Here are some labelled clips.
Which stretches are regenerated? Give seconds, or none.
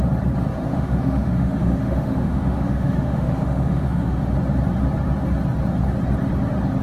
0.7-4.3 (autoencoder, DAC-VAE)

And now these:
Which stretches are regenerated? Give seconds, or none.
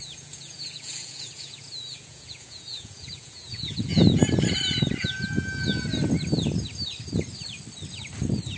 0.0-4.2 (vocoder, Vocos)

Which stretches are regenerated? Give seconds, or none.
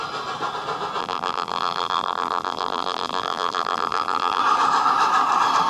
1.0-4.4 (vocoder, BigVGAN v2)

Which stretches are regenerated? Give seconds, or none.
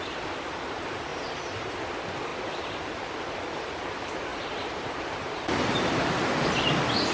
1.1-1.7 (vocoder, BigVGAN v2); 4.3-6.1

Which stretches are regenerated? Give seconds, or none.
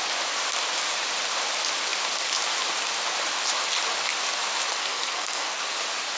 4.8-5.6 (codec, SNAC)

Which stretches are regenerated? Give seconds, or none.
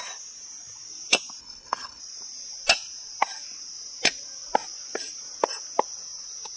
1.4-2.0 (codec, HILCodec)